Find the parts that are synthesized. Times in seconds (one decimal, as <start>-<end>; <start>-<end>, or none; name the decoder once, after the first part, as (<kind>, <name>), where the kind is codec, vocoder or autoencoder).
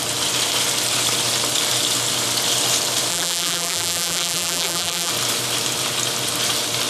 3.1-5.1 (vocoder, BigVGAN v2)